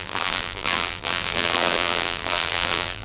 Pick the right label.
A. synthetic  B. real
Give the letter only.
A